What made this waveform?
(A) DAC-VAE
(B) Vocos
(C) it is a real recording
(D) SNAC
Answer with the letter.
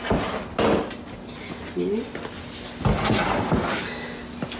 C